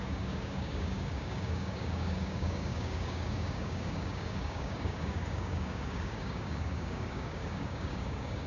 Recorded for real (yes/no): no